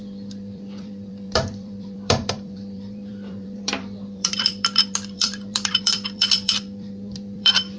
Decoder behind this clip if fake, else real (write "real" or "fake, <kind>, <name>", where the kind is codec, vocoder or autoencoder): fake, vocoder, BigVGAN v2